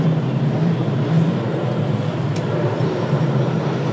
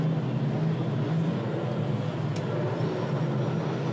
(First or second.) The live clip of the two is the second